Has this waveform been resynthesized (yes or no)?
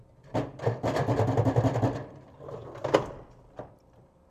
no